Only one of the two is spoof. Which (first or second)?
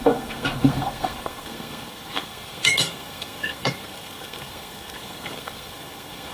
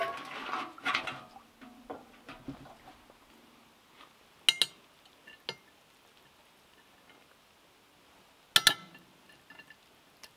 first